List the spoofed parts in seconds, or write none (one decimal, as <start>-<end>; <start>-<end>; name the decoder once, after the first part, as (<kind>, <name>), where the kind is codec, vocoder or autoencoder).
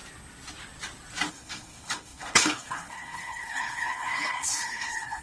1.3-5.2 (codec, HILCodec)